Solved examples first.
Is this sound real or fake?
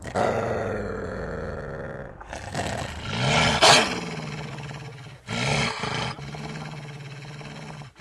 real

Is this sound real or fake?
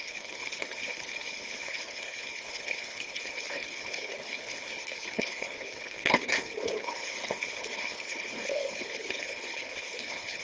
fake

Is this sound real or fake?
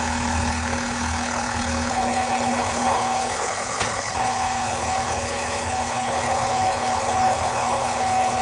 fake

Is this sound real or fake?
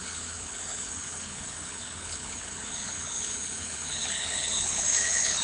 fake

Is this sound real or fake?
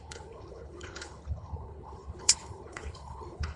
fake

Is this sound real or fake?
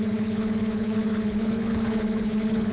fake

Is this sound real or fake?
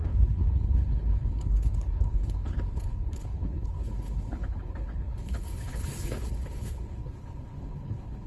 fake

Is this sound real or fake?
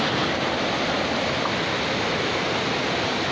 real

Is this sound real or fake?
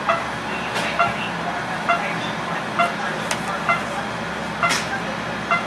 real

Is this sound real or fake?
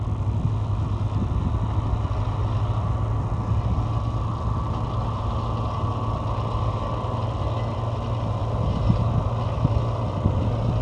real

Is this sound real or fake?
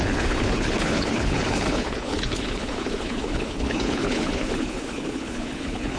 fake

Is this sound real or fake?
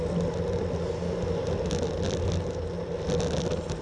real